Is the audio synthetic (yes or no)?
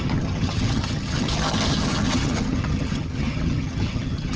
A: yes